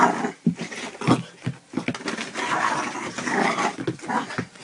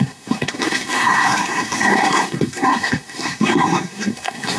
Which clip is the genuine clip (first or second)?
first